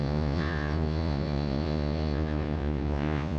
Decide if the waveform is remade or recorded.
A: remade